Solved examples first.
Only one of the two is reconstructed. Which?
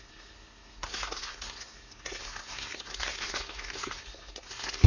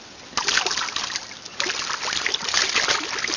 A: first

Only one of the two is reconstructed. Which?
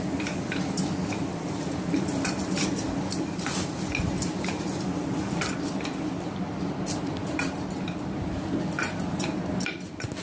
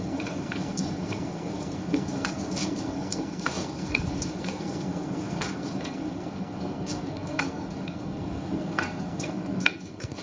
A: second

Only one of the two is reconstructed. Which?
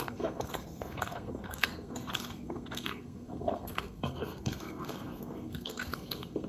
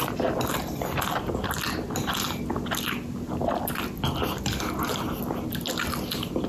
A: first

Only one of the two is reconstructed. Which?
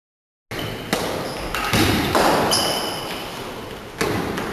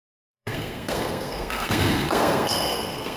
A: second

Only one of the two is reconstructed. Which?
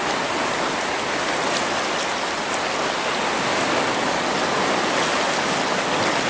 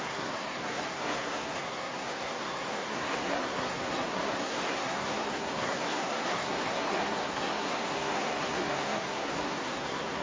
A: second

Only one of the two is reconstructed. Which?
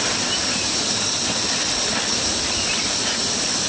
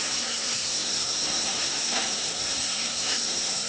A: second